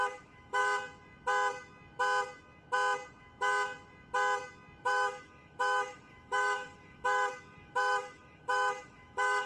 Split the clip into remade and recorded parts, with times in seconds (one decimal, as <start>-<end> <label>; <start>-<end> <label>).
0.0-0.6 remade; 0.6-4.8 recorded; 4.8-9.5 remade